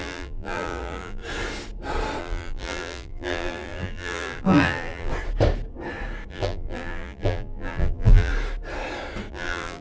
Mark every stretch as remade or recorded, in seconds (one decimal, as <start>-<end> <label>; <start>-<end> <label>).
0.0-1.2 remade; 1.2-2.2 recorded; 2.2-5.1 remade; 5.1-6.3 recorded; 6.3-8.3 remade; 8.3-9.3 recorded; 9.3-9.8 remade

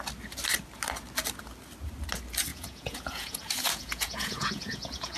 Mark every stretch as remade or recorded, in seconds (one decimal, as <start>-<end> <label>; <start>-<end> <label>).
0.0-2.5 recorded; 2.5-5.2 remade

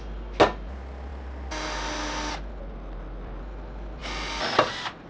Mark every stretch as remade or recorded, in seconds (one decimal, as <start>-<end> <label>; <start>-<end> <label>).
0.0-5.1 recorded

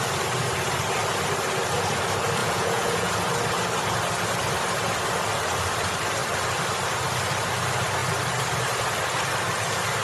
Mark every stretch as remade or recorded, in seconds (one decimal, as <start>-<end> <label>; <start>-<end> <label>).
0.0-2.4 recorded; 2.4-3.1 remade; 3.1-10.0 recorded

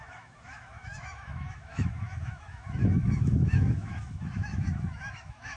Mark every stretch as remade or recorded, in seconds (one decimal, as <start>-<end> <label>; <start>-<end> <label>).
0.0-5.6 remade

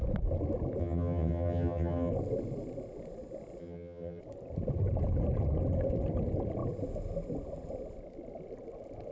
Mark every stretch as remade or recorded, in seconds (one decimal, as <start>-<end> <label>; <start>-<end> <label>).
0.0-0.8 recorded; 0.8-2.1 remade; 2.1-3.6 recorded; 3.6-4.2 remade; 4.2-9.1 recorded

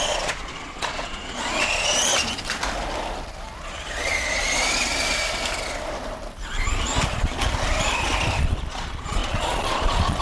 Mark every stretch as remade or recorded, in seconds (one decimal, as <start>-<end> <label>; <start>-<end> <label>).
0.0-2.1 remade; 2.1-3.7 recorded; 3.7-4.4 remade; 4.4-8.4 recorded; 8.4-10.2 remade